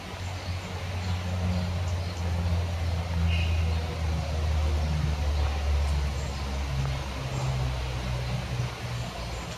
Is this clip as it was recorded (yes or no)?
yes